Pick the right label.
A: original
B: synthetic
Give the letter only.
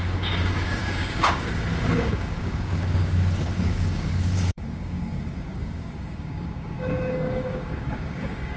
B